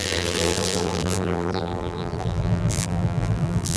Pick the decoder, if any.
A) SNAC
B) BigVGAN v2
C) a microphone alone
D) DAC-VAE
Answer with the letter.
B